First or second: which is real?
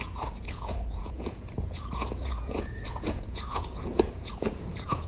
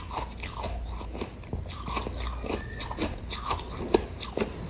second